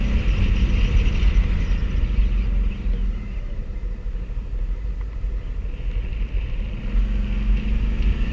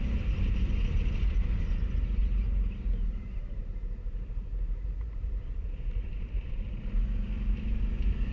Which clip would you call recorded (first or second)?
first